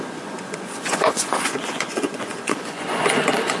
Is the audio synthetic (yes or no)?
yes